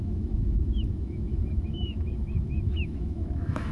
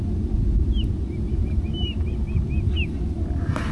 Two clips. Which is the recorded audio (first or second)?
second